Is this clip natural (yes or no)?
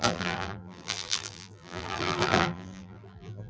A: no